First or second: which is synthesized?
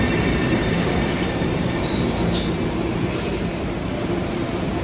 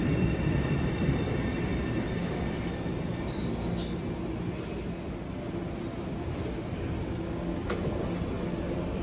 first